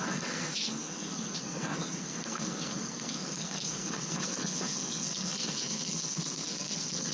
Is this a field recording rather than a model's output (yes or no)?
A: no